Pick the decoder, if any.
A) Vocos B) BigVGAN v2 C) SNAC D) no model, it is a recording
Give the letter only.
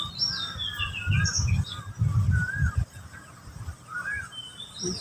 D